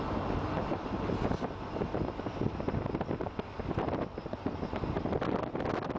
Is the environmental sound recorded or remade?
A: recorded